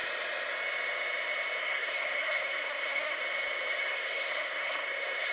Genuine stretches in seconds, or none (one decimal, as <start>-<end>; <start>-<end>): 0.0-1.6; 3.2-3.7